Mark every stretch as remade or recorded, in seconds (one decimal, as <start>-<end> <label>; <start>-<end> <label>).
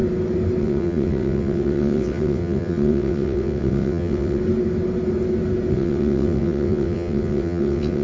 0.0-0.6 recorded; 0.6-4.4 remade; 4.4-5.7 recorded; 5.7-8.0 remade